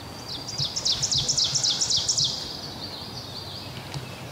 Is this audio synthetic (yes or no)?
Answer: no